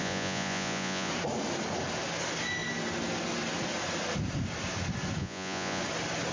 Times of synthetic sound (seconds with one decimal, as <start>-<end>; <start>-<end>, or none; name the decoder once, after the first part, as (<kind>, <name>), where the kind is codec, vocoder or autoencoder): 0.0-1.1 (vocoder, Vocos); 5.2-5.8